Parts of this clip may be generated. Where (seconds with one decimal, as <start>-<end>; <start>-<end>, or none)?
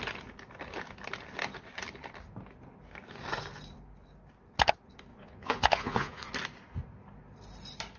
5.1-6.3